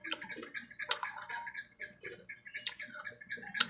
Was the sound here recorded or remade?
recorded